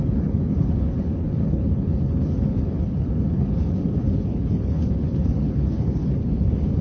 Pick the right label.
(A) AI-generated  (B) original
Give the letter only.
A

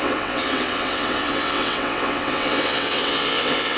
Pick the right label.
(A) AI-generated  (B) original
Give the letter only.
A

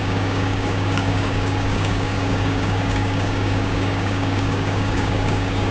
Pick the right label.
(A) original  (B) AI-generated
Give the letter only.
B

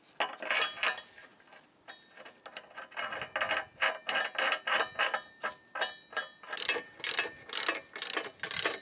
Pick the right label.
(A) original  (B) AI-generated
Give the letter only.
A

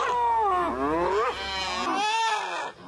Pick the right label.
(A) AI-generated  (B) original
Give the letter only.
B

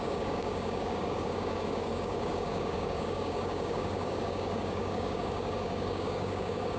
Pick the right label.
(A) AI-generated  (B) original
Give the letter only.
A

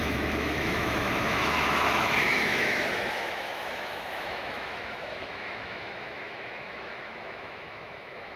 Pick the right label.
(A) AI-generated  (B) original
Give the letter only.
A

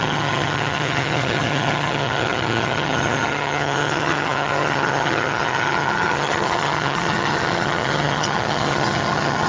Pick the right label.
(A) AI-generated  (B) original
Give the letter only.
A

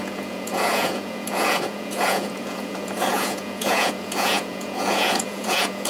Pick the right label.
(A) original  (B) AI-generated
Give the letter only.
B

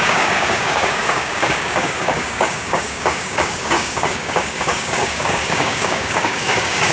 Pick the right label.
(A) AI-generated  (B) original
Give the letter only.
A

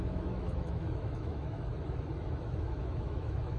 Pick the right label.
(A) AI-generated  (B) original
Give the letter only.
A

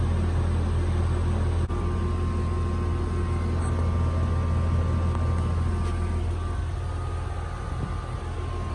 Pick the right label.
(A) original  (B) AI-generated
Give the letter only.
A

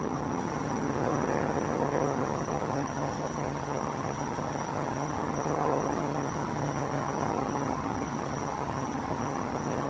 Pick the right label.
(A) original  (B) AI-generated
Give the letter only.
B